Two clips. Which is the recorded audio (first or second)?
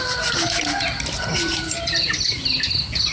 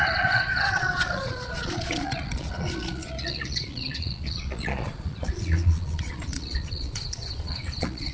first